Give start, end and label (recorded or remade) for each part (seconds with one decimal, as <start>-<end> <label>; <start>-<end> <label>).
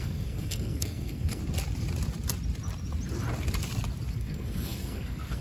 0.0-1.4 remade; 1.4-4.1 recorded; 4.1-5.4 remade